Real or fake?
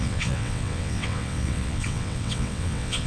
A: fake